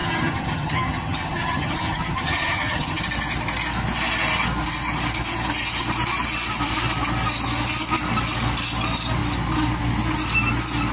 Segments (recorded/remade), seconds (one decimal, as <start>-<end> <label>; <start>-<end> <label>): 0.0-3.0 remade; 3.0-10.9 recorded